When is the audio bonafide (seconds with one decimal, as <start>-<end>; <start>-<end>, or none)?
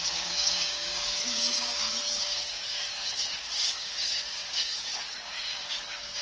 none